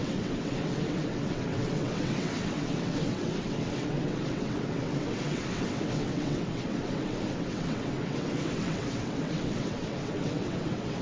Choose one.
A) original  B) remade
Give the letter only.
B